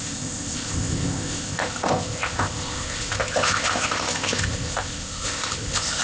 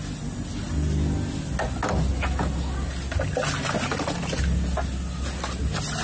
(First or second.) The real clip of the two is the second